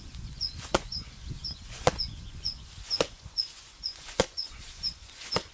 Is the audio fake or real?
fake